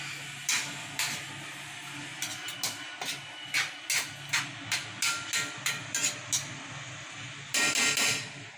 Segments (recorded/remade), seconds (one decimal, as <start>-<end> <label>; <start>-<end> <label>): 0.0-0.8 recorded; 0.8-1.3 remade; 1.3-8.6 recorded